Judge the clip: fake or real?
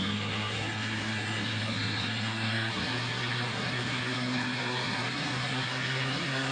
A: fake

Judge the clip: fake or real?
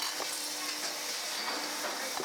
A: real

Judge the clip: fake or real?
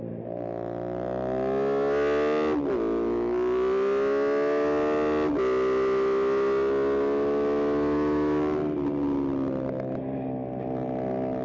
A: real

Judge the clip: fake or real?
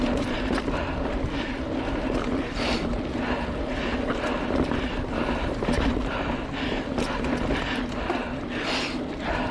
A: real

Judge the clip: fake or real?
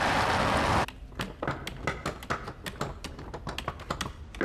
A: real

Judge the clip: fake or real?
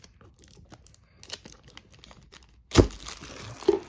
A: real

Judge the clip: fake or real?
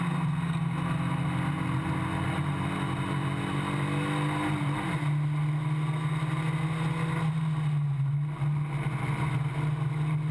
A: real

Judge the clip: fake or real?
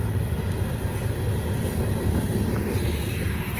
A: real